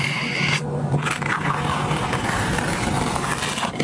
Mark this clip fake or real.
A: real